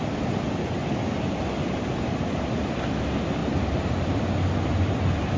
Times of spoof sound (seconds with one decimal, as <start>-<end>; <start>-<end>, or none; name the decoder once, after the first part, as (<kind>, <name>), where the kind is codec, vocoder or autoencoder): 3.4-4.1 (vocoder, BigVGAN v2)

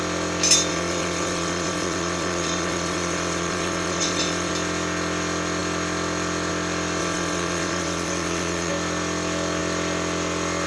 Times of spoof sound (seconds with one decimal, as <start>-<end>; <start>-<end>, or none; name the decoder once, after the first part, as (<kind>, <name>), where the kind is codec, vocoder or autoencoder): 0.7-4.5 (vocoder, WaveNeXt); 7.0-8.7

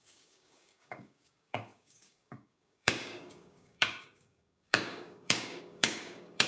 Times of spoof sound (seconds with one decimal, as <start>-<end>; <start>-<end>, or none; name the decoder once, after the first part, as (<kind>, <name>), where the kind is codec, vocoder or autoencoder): 0.0-6.5 (codec, DAC)

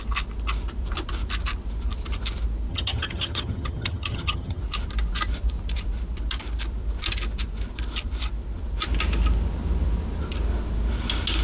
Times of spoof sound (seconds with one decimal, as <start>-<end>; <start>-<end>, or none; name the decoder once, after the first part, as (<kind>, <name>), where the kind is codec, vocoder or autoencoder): 2.7-4.6 (vocoder, HiFi-GAN)

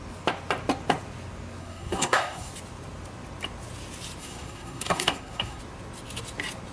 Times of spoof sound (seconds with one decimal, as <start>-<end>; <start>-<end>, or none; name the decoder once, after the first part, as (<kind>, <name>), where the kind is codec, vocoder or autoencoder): 1.6-2.5 (codec, SNAC); 4.2-5.6

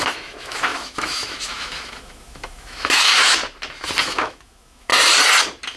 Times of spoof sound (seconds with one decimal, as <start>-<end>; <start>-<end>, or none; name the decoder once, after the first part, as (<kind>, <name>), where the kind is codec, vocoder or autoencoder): 0.0-3.4 (autoencoder, DAC-VAE); 4.0-4.9